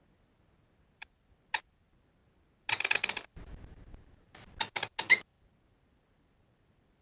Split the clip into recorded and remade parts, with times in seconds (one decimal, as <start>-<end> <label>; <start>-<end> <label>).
0.0-7.0 recorded